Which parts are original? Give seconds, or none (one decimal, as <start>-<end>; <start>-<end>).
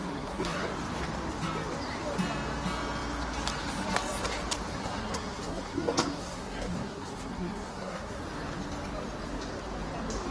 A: 0.7-4.7; 8.2-10.3